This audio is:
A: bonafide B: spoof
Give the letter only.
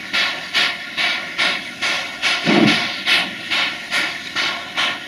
B